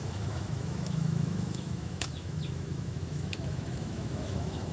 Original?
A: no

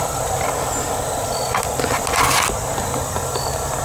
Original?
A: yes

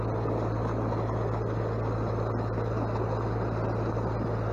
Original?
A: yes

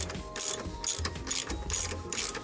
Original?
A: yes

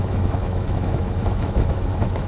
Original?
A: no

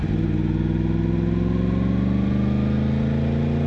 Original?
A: yes